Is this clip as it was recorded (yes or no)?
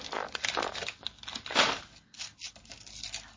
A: yes